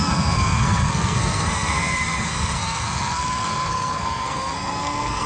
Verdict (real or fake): fake